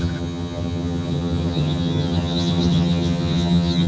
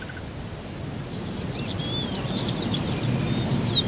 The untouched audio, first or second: second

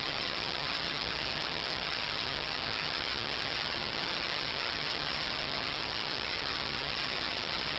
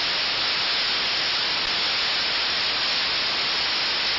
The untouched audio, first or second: second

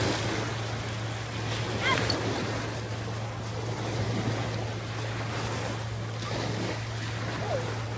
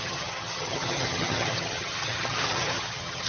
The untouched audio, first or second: first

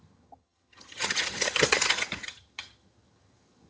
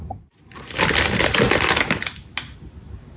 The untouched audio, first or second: second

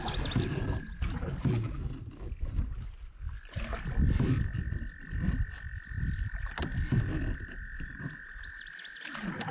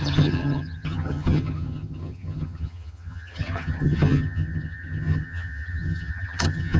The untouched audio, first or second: first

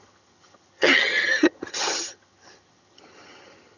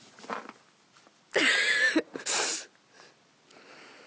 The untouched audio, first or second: second